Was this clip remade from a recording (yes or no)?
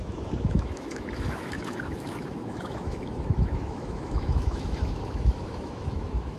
yes